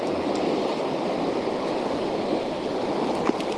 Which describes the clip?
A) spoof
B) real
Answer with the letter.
B